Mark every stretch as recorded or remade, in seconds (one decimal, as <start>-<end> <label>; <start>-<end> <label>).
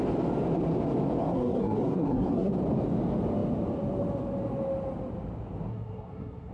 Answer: 0.0-1.2 recorded; 1.2-2.5 remade; 2.5-5.7 recorded; 5.7-6.5 remade